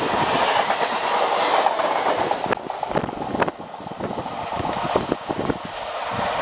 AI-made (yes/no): no